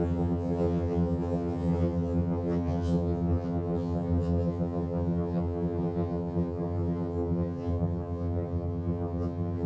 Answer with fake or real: fake